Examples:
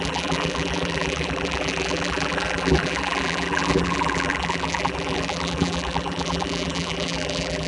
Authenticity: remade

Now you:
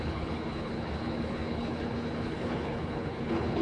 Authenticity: remade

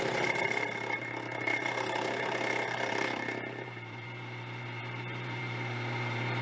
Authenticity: remade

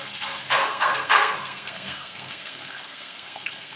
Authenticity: remade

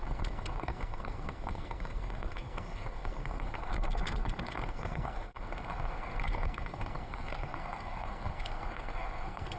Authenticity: remade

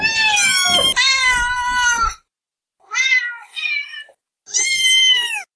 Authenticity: recorded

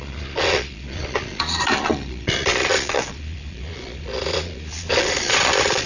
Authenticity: remade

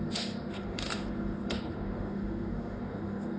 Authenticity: remade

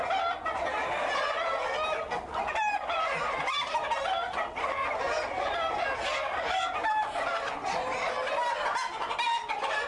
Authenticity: recorded